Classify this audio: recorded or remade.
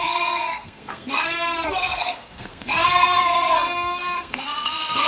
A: remade